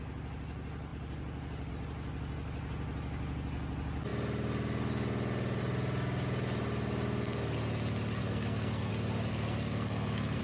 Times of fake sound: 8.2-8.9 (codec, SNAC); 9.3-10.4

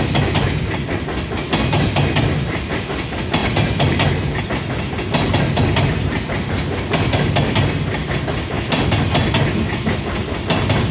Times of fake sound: none

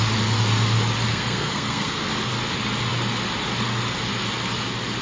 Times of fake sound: 1.1-2.3 (codec, SNAC)

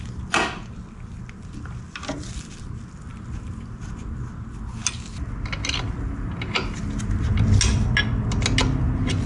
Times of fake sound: none

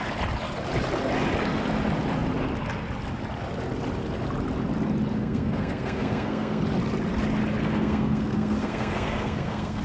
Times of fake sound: 5.1-6.6 (codec, SNAC); 7.6-9.8